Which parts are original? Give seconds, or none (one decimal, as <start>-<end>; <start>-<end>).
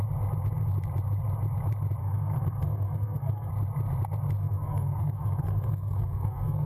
0.0-2.0; 3.5-4.4